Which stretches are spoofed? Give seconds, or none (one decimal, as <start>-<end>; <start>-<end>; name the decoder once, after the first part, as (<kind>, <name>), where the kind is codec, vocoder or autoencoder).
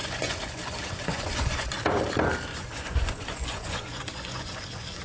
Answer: 0.0-1.8 (vocoder, Vocos); 2.5-5.0